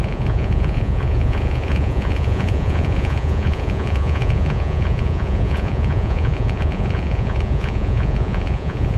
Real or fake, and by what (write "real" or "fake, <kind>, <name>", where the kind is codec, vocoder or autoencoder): fake, vocoder, Vocos